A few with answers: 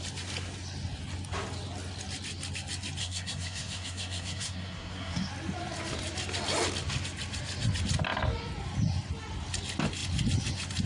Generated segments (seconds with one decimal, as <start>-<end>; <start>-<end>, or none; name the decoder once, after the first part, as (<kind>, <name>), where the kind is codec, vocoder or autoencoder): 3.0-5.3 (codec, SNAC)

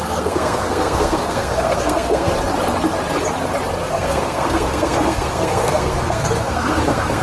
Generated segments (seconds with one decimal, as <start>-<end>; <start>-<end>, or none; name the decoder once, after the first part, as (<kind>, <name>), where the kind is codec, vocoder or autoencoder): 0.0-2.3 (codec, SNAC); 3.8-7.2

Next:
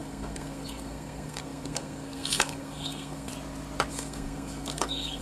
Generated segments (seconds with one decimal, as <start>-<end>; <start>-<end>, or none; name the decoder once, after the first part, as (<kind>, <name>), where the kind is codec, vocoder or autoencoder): 0.0-3.3 (codec, SNAC); 3.9-5.2